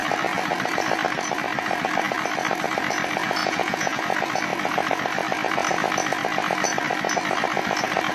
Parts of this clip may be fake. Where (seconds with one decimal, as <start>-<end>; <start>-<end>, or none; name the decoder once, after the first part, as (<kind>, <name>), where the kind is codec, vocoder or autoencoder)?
3.4-4.0 (vocoder, Vocos)